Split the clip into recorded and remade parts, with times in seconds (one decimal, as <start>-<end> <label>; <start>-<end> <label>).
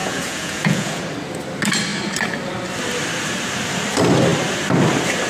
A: 0.0-1.0 remade; 1.0-5.3 recorded